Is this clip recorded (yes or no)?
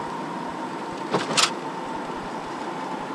no